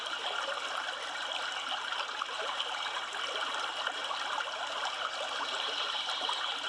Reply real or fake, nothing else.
real